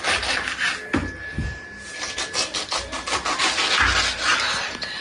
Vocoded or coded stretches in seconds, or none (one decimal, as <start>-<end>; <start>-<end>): none